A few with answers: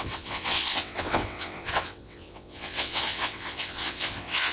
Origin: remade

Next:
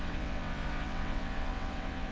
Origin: remade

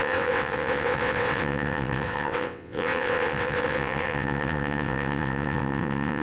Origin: remade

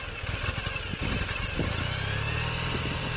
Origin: recorded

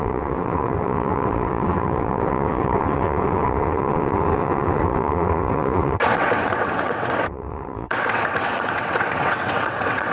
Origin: remade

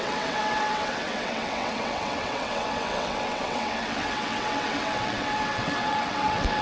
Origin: remade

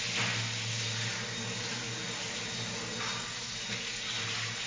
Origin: recorded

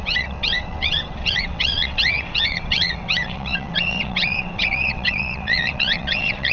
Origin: remade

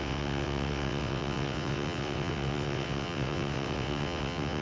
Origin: remade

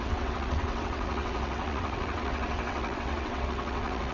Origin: remade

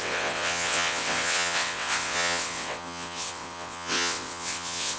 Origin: remade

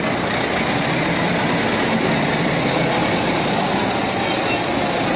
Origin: recorded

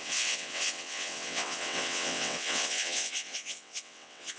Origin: remade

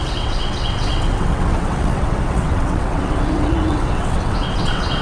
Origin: remade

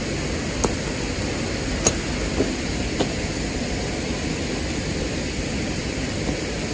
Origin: recorded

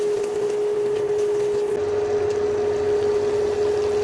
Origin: recorded